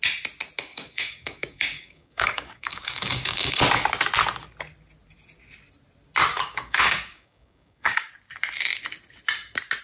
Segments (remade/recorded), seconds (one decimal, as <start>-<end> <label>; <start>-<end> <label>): 0.0-0.7 recorded; 0.7-3.5 remade; 3.5-6.3 recorded; 6.3-8.1 remade; 8.1-9.8 recorded